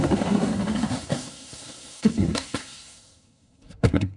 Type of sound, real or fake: fake